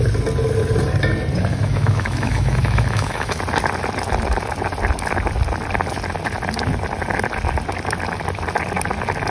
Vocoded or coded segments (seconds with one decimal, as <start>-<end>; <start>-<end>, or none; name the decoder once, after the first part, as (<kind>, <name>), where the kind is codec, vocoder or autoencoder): 1.5-3.4 (autoencoder, DAC-VAE)